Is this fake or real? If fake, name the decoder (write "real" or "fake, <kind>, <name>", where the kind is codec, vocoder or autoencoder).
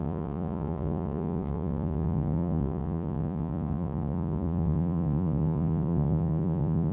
fake, vocoder, Vocos